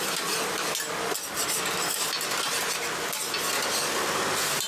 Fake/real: real